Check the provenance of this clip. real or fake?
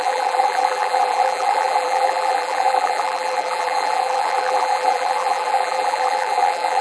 fake